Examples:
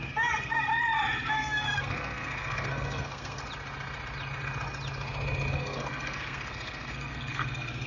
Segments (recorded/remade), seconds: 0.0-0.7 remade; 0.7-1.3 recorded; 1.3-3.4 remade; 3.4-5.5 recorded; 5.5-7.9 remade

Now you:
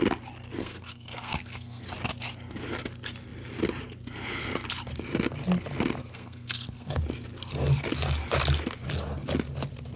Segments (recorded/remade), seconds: 0.0-0.6 recorded; 0.6-1.8 remade; 1.8-6.0 recorded; 6.0-7.0 remade; 7.0-10.0 recorded

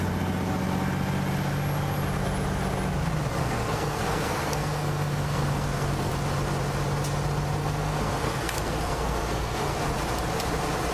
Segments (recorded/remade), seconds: 0.0-3.4 recorded; 3.4-6.1 remade; 6.1-7.6 recorded; 7.6-9.8 remade; 9.8-10.9 recorded

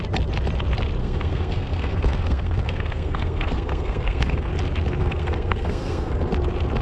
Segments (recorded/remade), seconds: 0.0-1.0 recorded; 1.0-4.5 remade; 4.5-5.0 recorded; 5.0-6.3 remade; 6.3-6.8 recorded